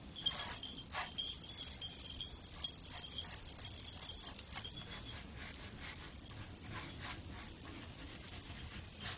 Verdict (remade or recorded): recorded